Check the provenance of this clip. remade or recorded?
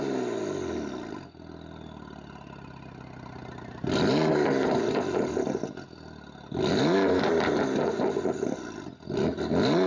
recorded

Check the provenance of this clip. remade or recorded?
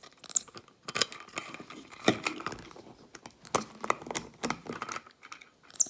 recorded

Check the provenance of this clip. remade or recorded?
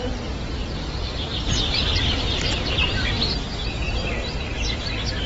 recorded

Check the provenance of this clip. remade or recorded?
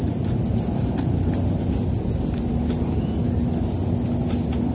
recorded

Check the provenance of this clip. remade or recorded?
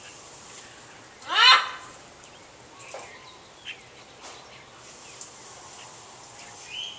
recorded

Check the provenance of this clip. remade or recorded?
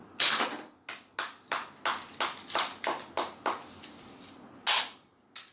recorded